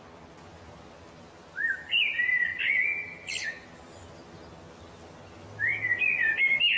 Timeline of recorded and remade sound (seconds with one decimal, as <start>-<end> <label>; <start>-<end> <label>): 0.0-6.8 recorded